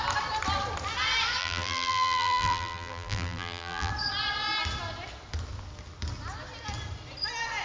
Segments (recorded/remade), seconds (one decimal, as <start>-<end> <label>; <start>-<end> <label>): 0.0-1.4 recorded; 1.4-3.9 remade; 3.9-7.6 recorded